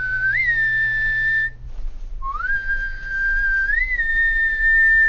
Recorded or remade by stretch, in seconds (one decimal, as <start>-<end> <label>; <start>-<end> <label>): 0.0-5.1 recorded

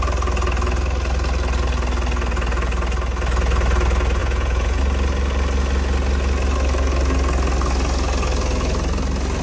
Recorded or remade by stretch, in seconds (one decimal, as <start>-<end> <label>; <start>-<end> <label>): 0.0-4.2 recorded; 4.2-4.8 remade; 4.8-9.4 recorded

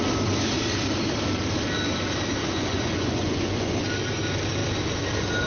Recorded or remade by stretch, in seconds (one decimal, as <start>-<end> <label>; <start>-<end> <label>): 0.0-2.4 recorded; 2.4-3.7 remade; 3.7-5.5 recorded

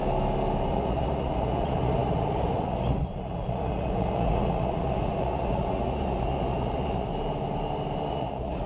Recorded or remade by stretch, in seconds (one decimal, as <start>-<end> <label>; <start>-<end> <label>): 0.0-0.7 recorded; 0.7-7.1 remade; 7.1-8.1 recorded; 8.1-8.7 remade